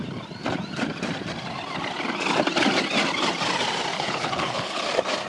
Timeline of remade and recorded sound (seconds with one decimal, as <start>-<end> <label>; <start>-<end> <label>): 0.0-3.9 recorded; 3.9-4.8 remade; 4.8-5.3 recorded